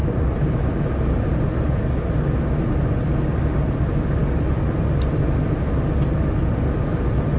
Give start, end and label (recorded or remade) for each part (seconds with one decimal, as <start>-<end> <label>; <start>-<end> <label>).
0.0-7.4 recorded